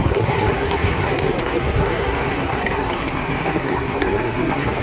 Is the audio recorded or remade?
remade